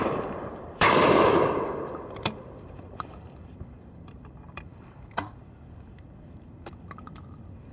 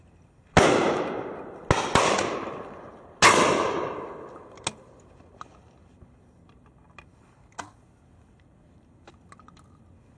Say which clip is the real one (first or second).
second